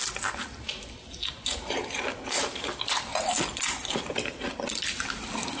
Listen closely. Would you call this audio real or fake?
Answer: real